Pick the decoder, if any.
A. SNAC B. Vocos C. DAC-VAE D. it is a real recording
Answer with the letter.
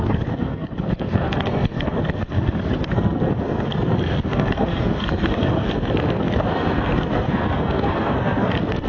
A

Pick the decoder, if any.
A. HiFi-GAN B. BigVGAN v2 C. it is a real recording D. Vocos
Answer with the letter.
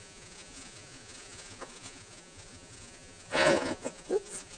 D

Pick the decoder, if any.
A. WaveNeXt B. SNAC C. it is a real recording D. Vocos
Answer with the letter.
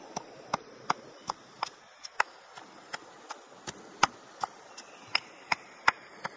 C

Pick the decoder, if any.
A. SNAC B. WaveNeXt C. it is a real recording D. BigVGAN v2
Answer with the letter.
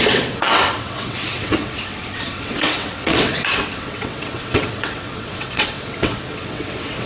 B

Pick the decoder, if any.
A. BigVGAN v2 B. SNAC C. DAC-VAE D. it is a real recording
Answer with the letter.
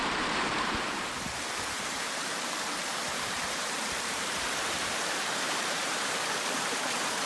A